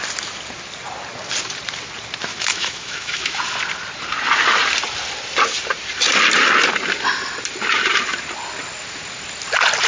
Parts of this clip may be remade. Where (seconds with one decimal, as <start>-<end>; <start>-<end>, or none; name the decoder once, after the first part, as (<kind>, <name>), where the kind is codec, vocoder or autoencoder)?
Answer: 2.3-3.4 (autoencoder, DAC-VAE)